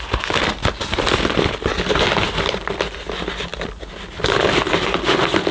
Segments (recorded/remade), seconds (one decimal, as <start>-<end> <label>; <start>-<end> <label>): 0.0-5.5 recorded